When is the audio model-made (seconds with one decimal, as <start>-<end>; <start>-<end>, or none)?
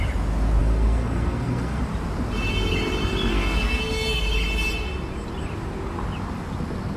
0.6-1.8; 3.3-4.2